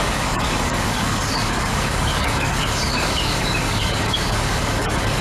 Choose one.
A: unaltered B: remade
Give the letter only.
B